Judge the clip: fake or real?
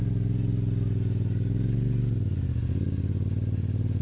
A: real